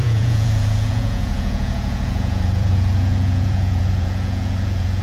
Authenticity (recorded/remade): remade